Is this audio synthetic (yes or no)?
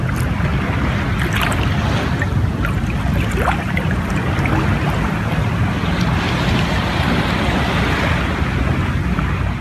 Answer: no